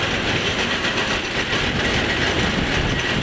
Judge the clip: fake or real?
real